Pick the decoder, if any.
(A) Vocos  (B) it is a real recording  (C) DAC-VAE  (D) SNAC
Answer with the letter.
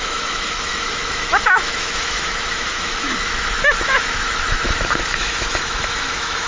C